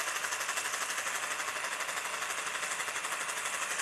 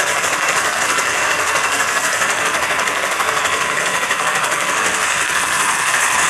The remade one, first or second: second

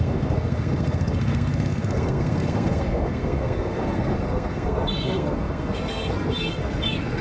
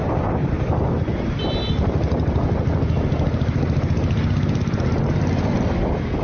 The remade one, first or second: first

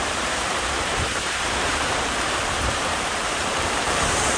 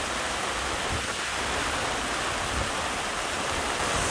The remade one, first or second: first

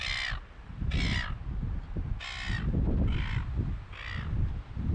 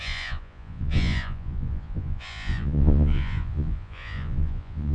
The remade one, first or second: second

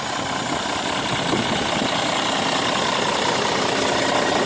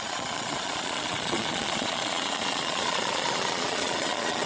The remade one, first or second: second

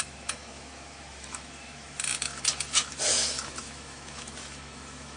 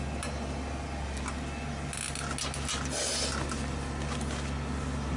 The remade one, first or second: first